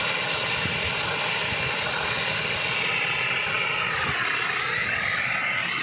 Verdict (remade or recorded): recorded